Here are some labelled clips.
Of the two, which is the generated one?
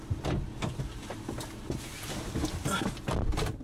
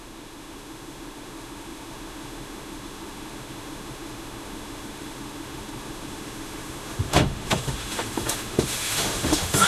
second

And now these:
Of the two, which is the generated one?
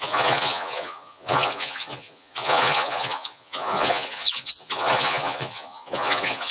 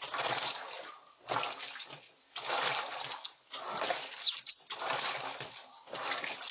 first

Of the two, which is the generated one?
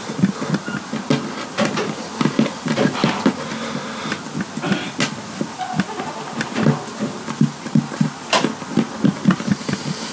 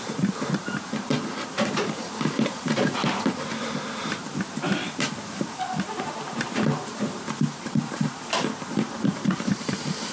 second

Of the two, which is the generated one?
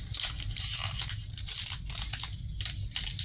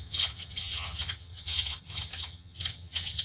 second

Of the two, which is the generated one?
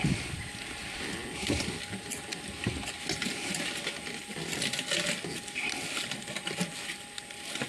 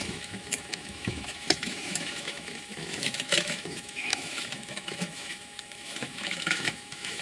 second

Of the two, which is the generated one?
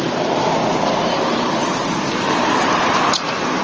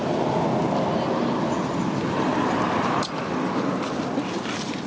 first